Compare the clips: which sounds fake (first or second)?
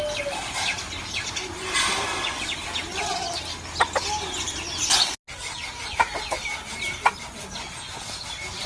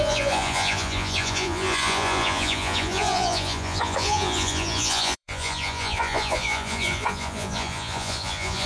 second